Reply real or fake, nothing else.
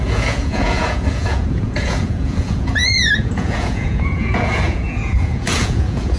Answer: fake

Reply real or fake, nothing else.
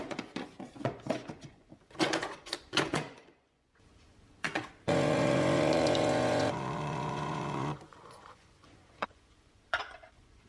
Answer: fake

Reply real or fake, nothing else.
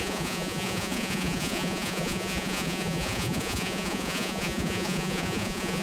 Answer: fake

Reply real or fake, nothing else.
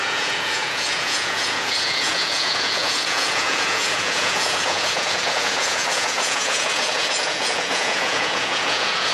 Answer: fake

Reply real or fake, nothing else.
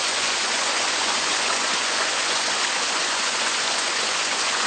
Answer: fake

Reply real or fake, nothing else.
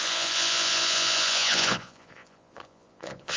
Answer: fake